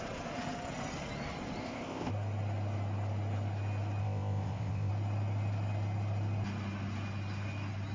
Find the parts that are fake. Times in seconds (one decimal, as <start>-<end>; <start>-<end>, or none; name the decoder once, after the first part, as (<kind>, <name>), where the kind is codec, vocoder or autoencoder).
1.6-2.1 (codec, ZipCodec); 4.0-4.9